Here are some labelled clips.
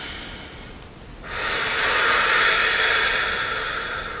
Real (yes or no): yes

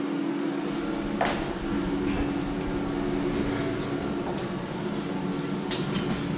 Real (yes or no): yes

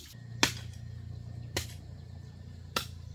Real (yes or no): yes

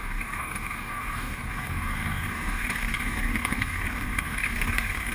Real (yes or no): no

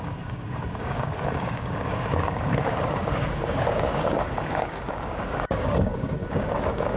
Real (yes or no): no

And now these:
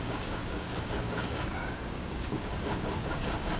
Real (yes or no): no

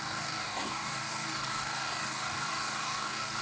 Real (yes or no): no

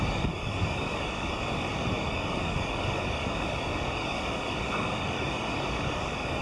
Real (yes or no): no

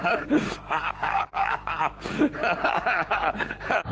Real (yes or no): no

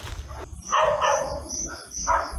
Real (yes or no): yes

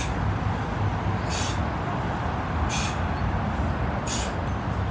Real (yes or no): yes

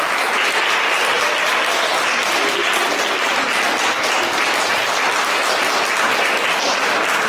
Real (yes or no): yes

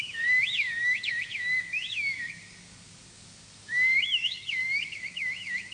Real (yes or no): no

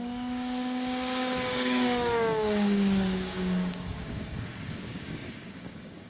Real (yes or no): no